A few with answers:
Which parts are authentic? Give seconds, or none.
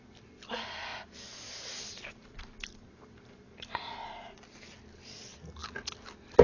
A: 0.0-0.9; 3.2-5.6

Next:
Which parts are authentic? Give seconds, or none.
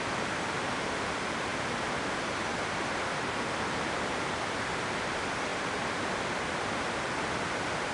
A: 0.0-7.9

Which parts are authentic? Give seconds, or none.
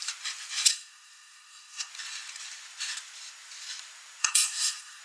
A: 0.0-0.7; 1.9-4.2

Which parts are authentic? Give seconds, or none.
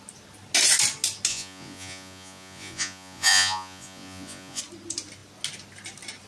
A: 0.0-1.3; 4.6-6.3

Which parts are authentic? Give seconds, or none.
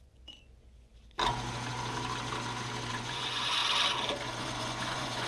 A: 0.9-2.9; 3.6-4.4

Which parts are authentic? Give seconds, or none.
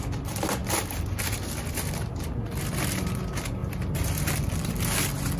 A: 0.0-0.6; 3.2-3.6; 4.7-5.4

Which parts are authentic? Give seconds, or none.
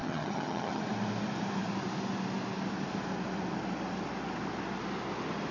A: 0.8-5.5